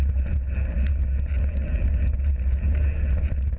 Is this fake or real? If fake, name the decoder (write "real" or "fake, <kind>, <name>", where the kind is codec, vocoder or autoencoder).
real